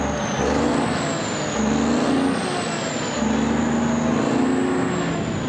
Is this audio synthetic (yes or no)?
no